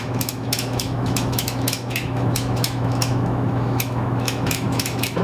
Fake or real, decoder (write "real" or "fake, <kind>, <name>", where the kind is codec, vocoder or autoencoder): fake, autoencoder, DAC-VAE